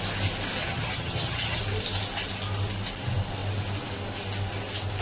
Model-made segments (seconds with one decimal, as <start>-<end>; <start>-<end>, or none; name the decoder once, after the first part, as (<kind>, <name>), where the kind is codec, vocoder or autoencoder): 0.6-1.6 (vocoder, HiFi-GAN)